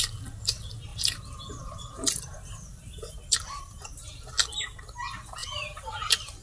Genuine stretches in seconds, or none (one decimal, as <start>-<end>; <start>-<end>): 0.0-0.9; 3.6-5.4; 5.9-6.4